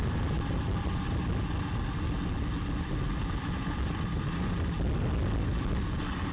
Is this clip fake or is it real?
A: real